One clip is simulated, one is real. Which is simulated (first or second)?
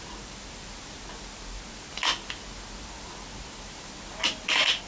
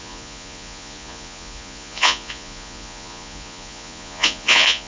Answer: second